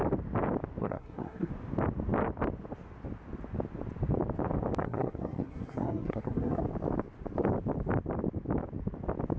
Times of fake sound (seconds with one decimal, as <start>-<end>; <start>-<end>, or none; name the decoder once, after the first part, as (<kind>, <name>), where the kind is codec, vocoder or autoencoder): 0.8-1.5 (codec, SNAC); 4.8-6.6